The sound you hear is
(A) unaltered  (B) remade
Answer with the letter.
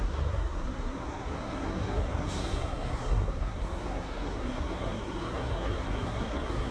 B